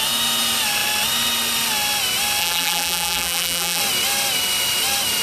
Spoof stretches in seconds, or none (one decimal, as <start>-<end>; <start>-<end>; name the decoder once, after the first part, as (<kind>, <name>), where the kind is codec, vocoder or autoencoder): 2.4-3.8 (vocoder, BigVGAN v2)